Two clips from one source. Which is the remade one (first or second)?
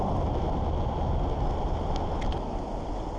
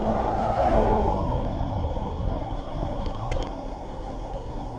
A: second